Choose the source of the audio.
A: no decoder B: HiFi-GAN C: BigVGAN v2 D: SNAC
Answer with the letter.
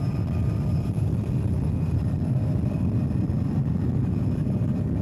C